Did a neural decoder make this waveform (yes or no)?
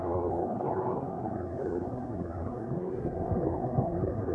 yes